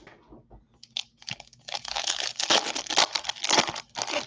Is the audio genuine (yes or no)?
yes